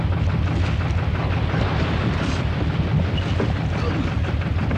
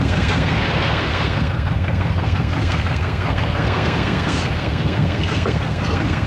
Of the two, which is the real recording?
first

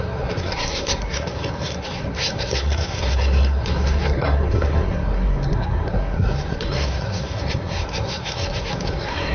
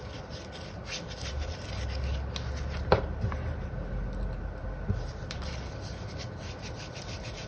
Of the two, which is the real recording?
second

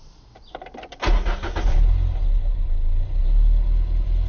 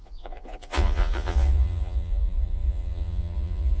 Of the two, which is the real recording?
first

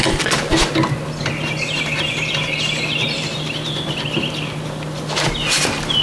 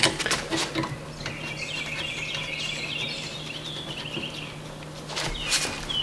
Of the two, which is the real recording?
second